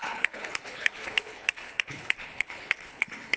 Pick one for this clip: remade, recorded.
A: remade